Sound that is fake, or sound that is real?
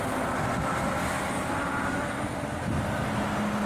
real